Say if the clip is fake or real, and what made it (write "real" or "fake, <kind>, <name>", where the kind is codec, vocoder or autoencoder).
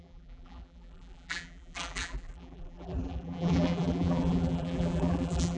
fake, vocoder, BigVGAN v2